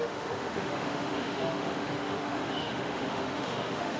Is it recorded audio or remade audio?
remade